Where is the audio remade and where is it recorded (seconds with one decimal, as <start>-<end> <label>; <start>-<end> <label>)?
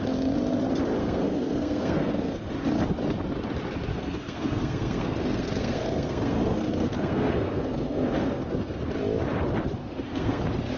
0.0-1.0 recorded; 1.0-2.5 remade; 2.5-3.9 recorded; 3.9-8.8 remade; 8.8-9.8 recorded; 9.8-10.4 remade; 10.4-10.8 recorded